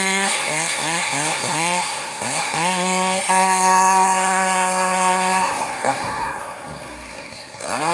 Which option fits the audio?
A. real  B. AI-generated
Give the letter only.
B